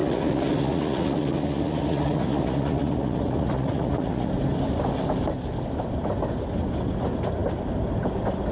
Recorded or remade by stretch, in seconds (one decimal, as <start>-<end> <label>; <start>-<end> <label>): 0.0-4.3 remade; 4.3-8.5 recorded